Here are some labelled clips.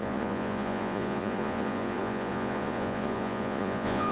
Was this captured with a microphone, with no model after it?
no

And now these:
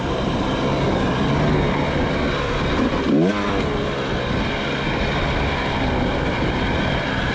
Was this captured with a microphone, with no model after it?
yes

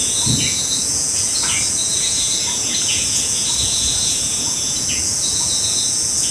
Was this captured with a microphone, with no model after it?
no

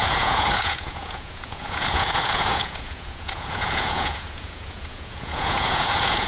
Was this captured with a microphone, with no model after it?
no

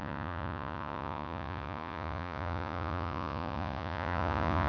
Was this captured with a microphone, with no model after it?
no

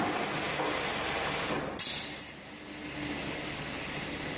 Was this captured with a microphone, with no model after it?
yes